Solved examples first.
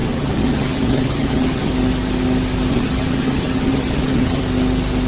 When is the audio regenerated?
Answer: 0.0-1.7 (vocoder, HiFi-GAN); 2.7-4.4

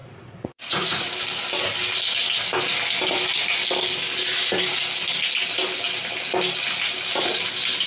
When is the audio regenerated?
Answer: 0.0-1.1 (vocoder, Vocos)

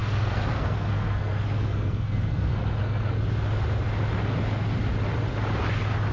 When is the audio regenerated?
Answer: 0.0-3.1 (codec, SNAC)